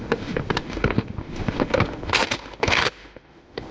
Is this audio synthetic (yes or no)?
yes